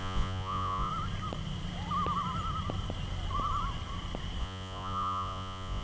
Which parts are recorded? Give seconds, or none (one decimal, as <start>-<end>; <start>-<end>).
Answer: 0.9-4.4